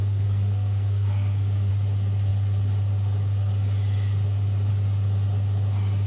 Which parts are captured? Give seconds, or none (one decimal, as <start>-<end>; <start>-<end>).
1.7-6.1